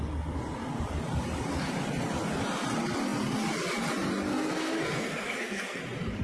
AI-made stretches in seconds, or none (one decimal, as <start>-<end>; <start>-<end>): 4.3-5.8